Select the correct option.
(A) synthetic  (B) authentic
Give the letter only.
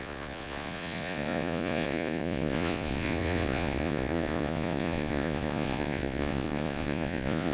A